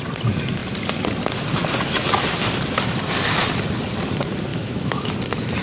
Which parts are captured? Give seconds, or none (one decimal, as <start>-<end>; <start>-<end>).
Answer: 0.0-4.5; 5.1-5.6